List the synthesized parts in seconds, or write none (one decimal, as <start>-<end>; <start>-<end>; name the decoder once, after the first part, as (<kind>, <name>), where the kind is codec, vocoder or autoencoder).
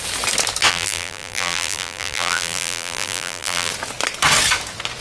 0.7-3.7 (vocoder, BigVGAN v2)